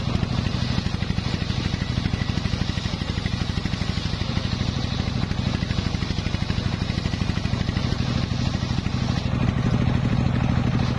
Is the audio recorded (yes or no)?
yes